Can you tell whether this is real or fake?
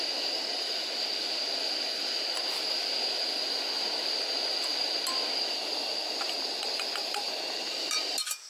real